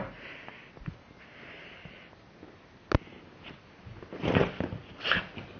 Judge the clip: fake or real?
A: real